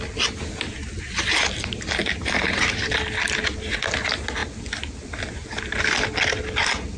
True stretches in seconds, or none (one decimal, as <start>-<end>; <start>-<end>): 0.0-2.0; 2.9-7.0